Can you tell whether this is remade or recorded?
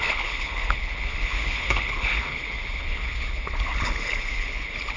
remade